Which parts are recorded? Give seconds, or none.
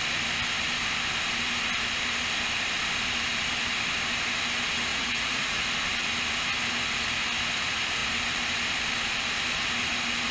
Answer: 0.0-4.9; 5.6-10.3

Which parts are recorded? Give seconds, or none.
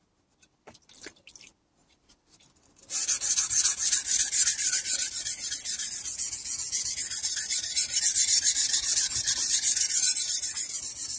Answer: 0.0-6.1; 6.9-11.2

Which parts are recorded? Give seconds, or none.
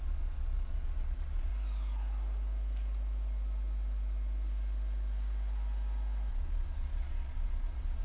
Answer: 1.5-6.3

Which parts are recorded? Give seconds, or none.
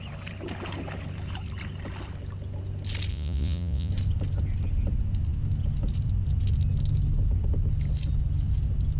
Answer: 0.0-3.1; 3.9-9.0